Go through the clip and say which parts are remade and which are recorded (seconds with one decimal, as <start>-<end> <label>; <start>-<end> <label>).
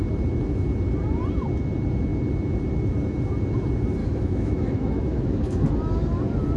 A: 0.0-4.0 recorded; 4.0-5.7 remade; 5.7-6.6 recorded